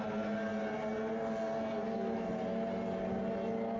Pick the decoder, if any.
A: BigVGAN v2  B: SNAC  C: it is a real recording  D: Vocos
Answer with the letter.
C